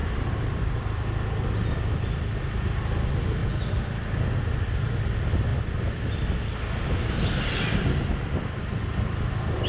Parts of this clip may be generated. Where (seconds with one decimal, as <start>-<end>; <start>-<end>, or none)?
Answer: 0.0-0.8; 3.4-4.9